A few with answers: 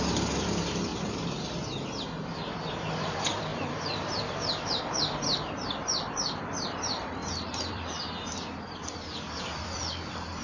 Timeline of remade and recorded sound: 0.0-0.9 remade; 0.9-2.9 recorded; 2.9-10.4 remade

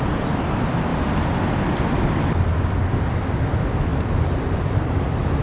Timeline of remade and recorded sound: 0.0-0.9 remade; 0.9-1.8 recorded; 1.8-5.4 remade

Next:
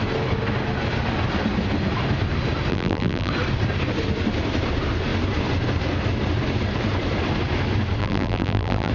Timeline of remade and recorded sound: 0.0-2.7 recorded; 2.7-3.3 remade; 3.3-8.0 recorded; 8.0-8.9 remade

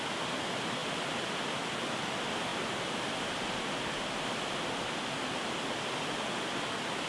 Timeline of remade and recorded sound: 0.0-0.8 recorded; 0.8-1.5 remade; 1.5-7.1 recorded

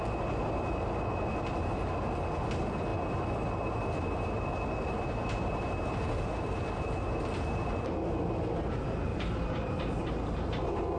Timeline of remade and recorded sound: 0.0-9.1 recorded; 9.1-10.1 remade; 10.1-11.0 recorded

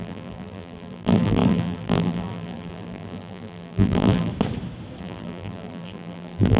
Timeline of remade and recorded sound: 0.0-4.3 remade; 4.3-5.0 recorded; 5.0-6.6 remade

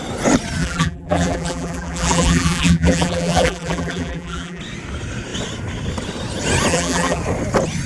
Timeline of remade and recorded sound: 0.0-0.6 recorded; 0.6-4.6 remade; 4.6-6.7 recorded; 6.7-7.2 remade; 7.2-7.9 recorded

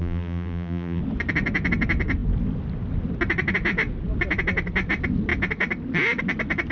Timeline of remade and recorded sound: 0.0-1.0 remade; 1.0-6.7 recorded